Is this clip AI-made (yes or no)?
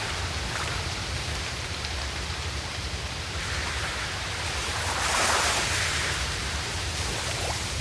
yes